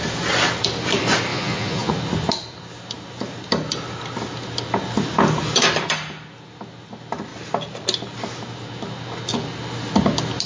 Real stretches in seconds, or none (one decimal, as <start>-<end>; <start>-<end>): 0.0-1.3; 1.9-10.5